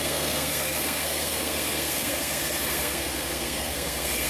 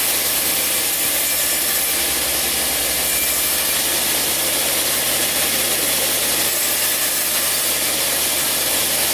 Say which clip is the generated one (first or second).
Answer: first